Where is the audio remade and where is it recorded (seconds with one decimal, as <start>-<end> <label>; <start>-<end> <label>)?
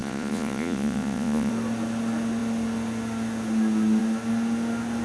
0.0-1.5 remade; 1.5-5.0 recorded